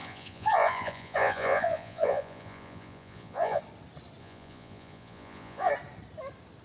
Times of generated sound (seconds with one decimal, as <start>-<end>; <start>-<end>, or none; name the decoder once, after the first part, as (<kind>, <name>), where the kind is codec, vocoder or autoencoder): 0.0-3.6 (vocoder, Vocos); 4.2-5.7